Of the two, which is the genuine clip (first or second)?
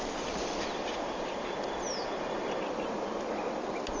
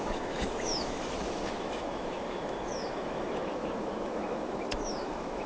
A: first